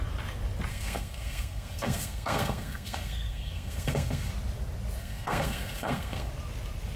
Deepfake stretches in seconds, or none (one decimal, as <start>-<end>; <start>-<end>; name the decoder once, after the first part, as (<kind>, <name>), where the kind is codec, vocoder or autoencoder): 0.7-4.3 (codec, SNAC); 5.0-6.3